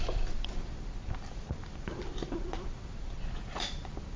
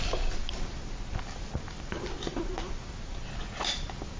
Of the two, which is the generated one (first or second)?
first